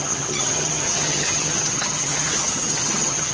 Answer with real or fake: fake